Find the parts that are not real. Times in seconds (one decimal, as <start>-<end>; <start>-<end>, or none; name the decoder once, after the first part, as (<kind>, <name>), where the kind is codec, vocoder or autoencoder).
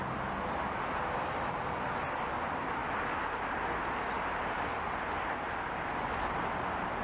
none